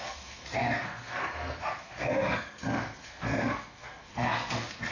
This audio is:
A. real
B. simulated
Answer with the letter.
B